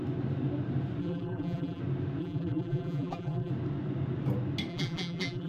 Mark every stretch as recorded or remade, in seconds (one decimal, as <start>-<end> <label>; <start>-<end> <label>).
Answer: 0.0-1.0 recorded; 1.0-1.8 remade; 1.8-2.2 recorded; 2.2-3.5 remade; 3.5-4.7 recorded; 4.7-5.5 remade